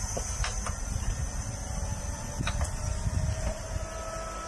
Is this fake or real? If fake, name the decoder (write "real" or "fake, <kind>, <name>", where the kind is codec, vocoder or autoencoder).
real